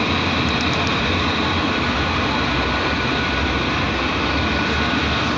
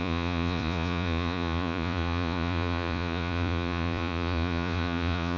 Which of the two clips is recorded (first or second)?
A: first